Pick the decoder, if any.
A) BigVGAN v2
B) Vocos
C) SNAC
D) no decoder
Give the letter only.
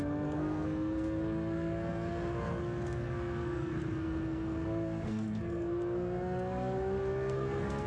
C